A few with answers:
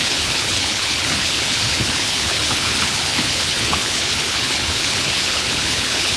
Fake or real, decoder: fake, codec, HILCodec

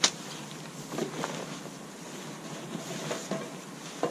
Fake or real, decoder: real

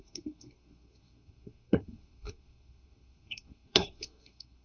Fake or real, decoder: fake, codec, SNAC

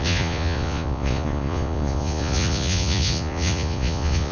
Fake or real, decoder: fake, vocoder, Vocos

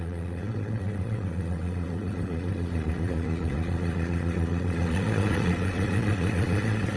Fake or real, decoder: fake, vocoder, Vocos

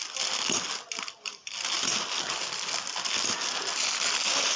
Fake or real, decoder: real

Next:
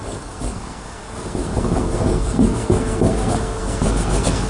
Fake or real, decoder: fake, codec, SNAC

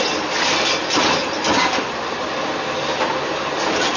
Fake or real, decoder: real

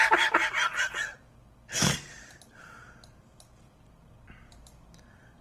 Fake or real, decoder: real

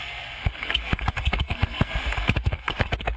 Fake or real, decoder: fake, codec, SNAC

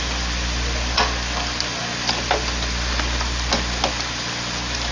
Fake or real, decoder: real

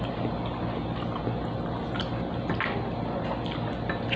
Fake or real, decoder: real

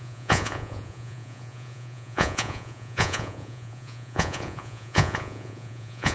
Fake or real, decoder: fake, vocoder, Vocos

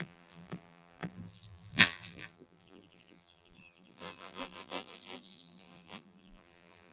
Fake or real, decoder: fake, vocoder, BigVGAN v2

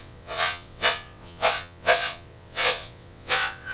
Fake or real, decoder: fake, vocoder, WaveNeXt